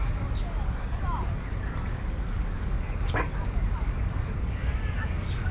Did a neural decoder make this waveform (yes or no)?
yes